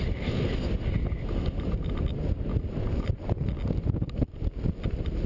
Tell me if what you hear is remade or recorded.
recorded